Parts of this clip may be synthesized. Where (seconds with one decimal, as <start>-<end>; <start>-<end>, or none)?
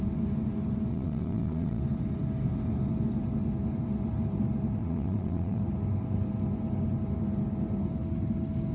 0.9-1.8; 4.8-5.6